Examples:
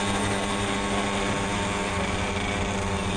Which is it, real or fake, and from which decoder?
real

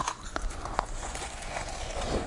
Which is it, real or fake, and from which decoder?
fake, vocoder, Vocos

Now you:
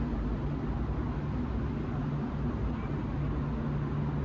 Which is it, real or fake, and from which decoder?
real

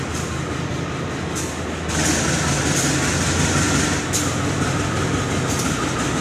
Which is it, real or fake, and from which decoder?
real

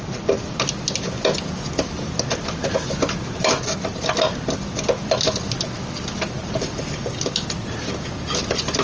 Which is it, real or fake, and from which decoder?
real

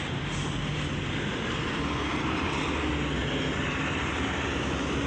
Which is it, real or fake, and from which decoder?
real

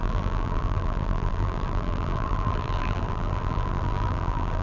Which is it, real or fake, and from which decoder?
fake, vocoder, BigVGAN v2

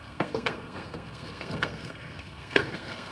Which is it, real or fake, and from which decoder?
fake, codec, SNAC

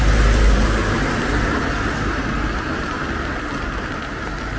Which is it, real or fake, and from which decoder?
real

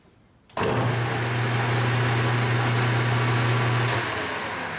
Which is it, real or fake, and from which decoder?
real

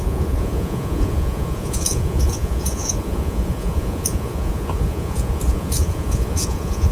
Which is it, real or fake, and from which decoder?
fake, vocoder, Vocos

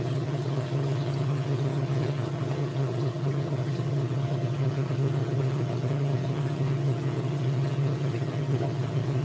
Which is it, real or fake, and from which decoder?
fake, vocoder, HiFi-GAN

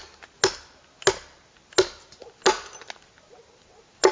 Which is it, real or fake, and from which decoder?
real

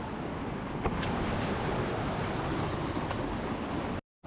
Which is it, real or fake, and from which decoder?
real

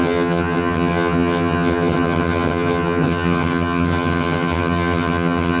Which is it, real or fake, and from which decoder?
fake, vocoder, HiFi-GAN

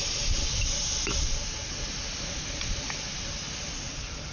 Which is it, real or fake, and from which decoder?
real